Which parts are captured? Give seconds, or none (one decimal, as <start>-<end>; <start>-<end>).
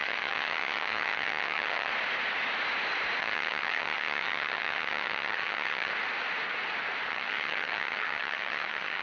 1.9-3.2; 5.9-7.1